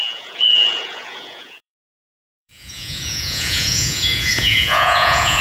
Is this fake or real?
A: fake